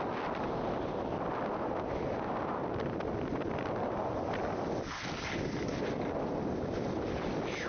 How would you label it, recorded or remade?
recorded